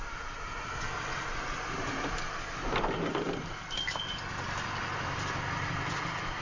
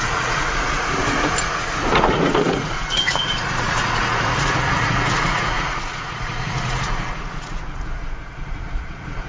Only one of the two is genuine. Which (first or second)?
first